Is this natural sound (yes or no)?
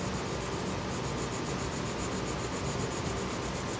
yes